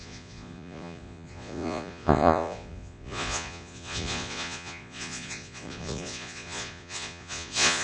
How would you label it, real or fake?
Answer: fake